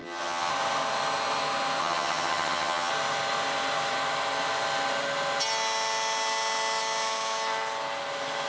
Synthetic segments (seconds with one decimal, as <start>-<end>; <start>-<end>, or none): 0.0-0.5; 1.8-2.9